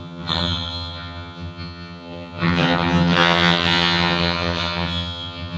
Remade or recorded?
remade